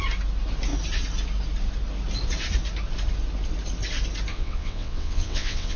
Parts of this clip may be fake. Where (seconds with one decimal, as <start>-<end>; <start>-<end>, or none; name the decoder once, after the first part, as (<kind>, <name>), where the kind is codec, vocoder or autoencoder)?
4.3-5.8 (vocoder, WaveNeXt)